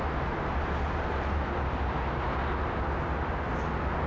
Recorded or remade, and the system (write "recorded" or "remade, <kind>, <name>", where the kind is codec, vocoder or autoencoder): recorded